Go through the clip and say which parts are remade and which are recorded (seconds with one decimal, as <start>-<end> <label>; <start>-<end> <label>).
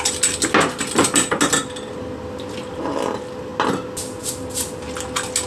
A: 0.0-5.5 recorded